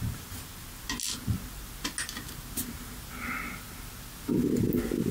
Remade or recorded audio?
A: recorded